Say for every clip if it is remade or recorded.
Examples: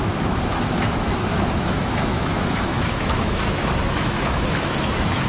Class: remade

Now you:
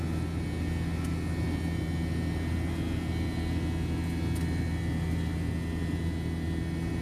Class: recorded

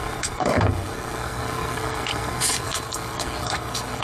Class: remade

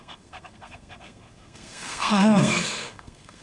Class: remade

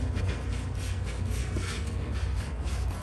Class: remade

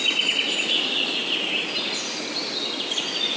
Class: recorded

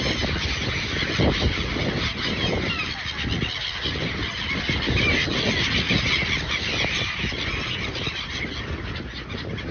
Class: recorded